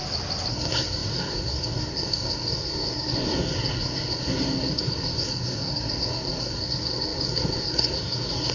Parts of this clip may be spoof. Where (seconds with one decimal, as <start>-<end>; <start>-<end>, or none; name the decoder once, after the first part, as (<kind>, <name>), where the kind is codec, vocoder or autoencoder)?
0.5-8.5 (codec, SNAC)